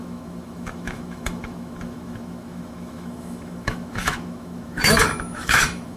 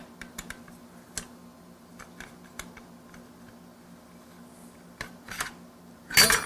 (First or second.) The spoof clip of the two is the first